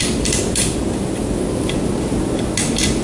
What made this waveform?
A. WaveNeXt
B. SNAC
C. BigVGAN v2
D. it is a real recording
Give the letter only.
D